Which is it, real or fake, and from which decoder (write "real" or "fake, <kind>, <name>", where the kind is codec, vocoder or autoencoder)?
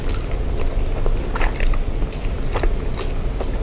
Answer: real